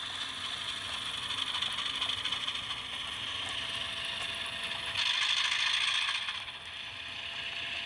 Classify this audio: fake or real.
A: real